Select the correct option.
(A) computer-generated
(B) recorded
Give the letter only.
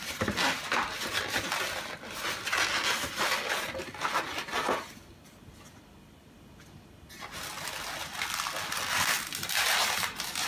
B